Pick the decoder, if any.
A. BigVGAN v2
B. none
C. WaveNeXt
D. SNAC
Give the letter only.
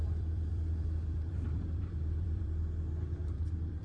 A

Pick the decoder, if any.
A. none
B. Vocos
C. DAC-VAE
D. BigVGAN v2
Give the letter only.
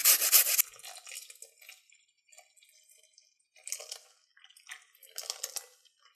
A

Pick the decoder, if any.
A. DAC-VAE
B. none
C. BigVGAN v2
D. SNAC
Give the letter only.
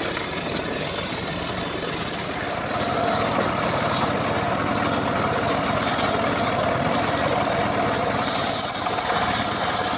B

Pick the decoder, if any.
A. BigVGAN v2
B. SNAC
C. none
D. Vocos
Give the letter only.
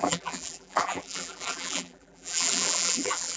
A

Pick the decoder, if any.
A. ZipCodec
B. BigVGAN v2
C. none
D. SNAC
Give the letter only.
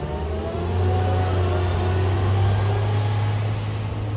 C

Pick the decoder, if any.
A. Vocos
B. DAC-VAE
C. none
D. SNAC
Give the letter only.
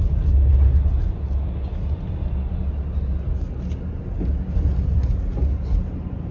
C